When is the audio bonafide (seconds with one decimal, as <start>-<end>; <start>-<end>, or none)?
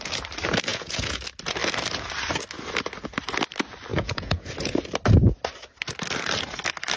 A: 0.0-0.7; 1.2-3.9; 4.5-7.0